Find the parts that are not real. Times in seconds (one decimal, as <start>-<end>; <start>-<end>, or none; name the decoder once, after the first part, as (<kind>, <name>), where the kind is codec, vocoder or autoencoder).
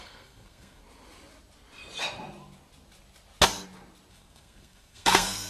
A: 0.0-0.8 (codec, SNAC); 4.1-5.5